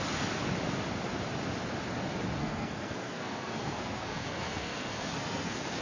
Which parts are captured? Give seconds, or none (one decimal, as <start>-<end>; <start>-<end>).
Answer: 0.0-2.4